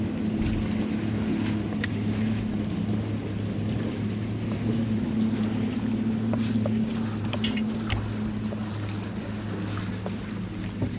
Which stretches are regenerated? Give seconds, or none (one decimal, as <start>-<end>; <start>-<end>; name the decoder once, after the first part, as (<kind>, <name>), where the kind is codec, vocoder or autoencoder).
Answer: none